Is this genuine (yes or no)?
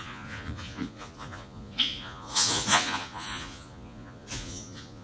no